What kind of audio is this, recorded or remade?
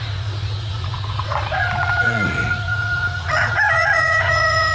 remade